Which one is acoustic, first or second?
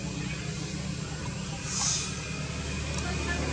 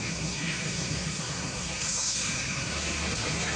first